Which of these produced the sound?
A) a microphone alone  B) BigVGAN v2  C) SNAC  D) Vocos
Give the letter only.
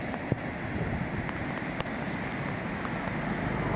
A